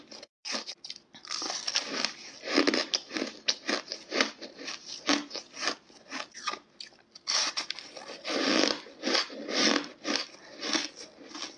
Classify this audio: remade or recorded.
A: recorded